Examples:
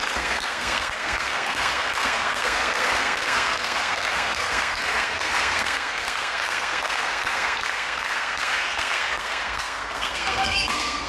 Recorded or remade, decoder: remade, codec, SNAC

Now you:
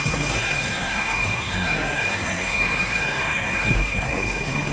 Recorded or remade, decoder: remade, codec, SNAC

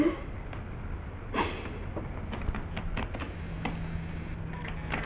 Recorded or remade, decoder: recorded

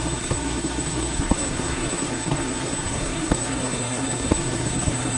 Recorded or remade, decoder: remade, codec, SNAC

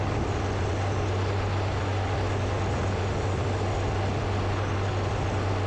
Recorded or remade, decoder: recorded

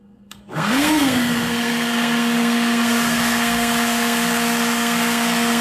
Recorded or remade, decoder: remade, codec, SNAC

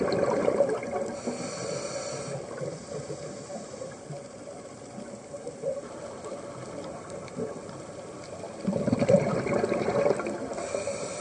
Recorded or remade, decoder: recorded